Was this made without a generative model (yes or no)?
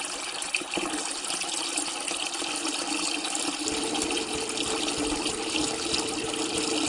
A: yes